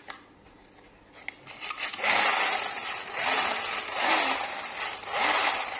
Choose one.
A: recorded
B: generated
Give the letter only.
A